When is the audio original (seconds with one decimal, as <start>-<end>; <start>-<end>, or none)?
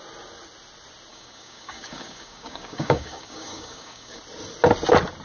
0.0-1.1; 4.2-5.2